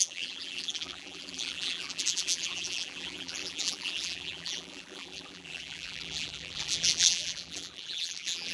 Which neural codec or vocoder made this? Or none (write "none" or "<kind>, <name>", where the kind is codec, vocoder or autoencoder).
vocoder, BigVGAN v2